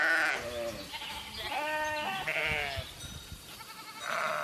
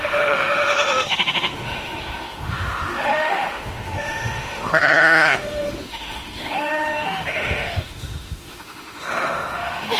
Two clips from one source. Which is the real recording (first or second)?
first